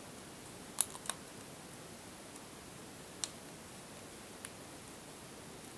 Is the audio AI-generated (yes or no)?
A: no